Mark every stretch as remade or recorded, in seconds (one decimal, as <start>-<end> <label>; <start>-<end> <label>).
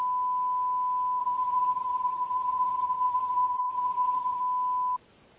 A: 0.0-1.2 recorded; 1.2-4.4 remade; 4.4-5.4 recorded